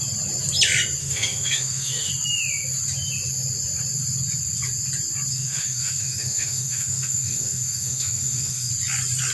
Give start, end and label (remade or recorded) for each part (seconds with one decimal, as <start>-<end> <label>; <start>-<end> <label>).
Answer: 0.0-1.0 recorded; 1.0-2.1 remade; 2.1-5.3 recorded; 5.3-8.7 remade; 8.7-9.3 recorded